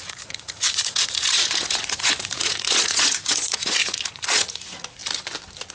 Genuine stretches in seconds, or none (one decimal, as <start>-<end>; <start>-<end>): 5.0-5.7

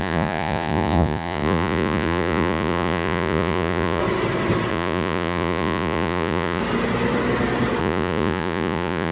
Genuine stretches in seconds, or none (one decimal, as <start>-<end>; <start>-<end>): 4.0-4.7; 6.6-7.8